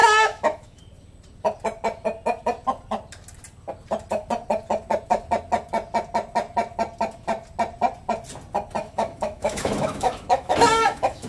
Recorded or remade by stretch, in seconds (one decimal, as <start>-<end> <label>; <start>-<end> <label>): 0.0-0.8 remade; 0.8-8.8 recorded; 8.8-11.3 remade